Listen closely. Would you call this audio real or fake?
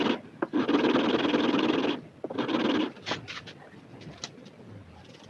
real